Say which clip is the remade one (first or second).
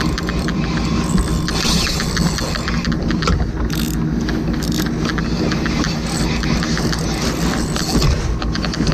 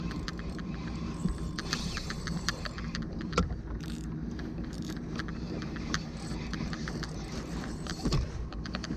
second